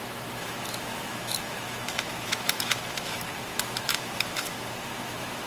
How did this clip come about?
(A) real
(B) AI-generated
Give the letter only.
B